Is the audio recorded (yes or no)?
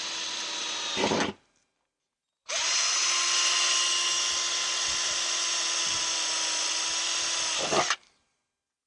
yes